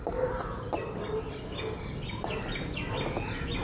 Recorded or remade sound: recorded